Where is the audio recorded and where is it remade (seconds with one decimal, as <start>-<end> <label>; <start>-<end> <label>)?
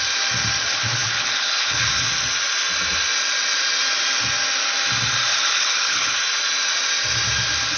0.0-0.6 recorded; 0.6-1.9 remade; 1.9-5.3 recorded; 5.3-6.2 remade; 6.2-7.8 recorded